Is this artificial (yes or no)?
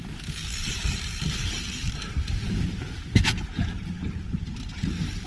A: yes